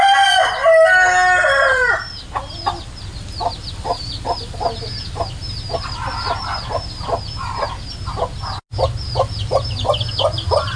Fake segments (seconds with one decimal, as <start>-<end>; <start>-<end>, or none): none